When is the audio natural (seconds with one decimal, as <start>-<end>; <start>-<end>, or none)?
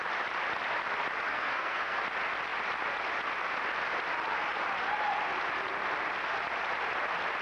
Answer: 0.0-1.3; 2.0-7.4